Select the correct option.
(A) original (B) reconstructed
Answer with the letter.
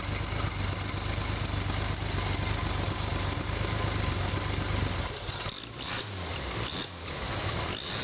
A